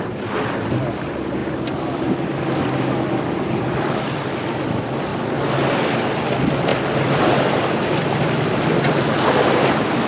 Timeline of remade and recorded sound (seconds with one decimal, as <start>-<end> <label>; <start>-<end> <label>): 0.0-5.1 remade; 5.1-5.9 recorded; 5.9-10.1 remade

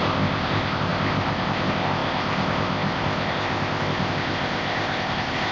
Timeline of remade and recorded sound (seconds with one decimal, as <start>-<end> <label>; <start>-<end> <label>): 0.0-5.5 remade

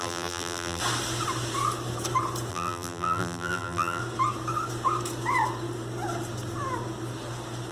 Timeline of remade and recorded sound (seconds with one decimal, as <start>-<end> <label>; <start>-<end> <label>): 0.0-0.8 remade; 0.8-2.5 recorded; 2.5-4.0 remade; 4.0-7.7 recorded

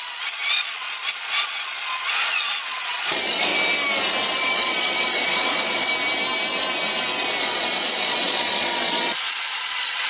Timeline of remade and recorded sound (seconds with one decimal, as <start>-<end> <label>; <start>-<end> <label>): 0.0-3.5 remade; 3.5-4.3 recorded; 4.3-5.9 remade; 5.9-7.4 recorded; 7.4-10.1 remade

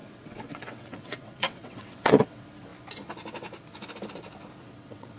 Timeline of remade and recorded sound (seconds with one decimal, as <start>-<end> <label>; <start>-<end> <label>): 0.0-2.7 remade; 2.7-4.6 recorded; 4.6-5.2 remade

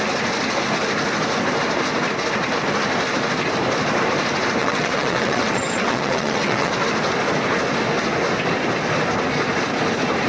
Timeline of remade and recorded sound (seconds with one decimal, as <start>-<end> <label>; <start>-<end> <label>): 0.0-4.6 recorded; 4.6-6.7 remade; 6.7-10.3 recorded